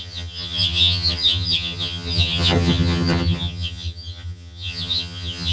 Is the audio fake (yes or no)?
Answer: yes